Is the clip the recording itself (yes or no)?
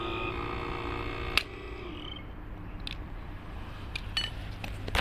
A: yes